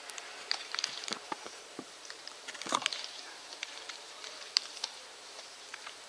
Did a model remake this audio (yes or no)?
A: yes